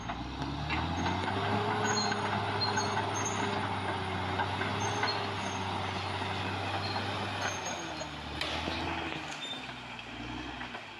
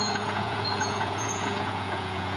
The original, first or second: first